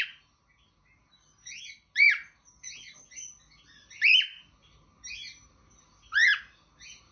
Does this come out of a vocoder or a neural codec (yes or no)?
no